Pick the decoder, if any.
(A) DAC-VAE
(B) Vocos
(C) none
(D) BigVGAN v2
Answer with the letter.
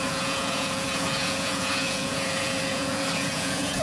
B